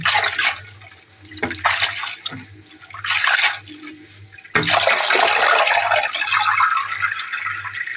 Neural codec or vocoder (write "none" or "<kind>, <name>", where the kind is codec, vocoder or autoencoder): none